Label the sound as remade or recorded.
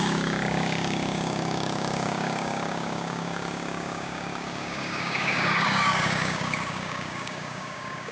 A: remade